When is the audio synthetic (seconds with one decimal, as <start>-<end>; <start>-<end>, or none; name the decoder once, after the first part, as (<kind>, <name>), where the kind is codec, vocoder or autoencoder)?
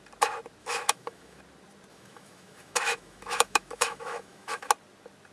0.6-1.4 (autoencoder, DAC-VAE); 1.9-4.7